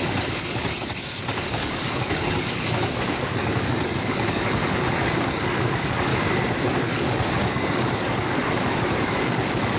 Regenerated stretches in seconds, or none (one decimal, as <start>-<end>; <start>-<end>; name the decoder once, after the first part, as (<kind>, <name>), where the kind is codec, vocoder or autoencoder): 0.0-6.1 (codec, DAC); 6.8-9.8